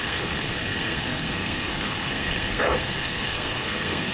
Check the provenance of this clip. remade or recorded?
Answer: remade